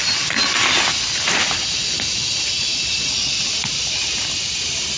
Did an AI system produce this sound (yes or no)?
no